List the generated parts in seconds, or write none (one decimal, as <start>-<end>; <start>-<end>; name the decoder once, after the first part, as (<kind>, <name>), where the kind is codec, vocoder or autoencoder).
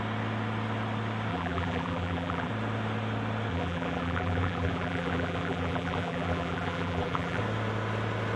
1.3-2.5 (vocoder, BigVGAN v2); 3.5-7.4